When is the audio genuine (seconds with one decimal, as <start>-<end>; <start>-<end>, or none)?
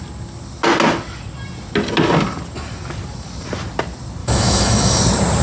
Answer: 0.0-4.2; 5.0-5.4